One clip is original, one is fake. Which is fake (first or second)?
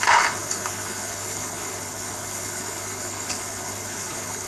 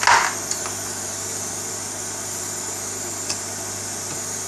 first